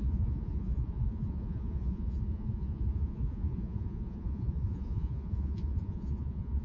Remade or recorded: remade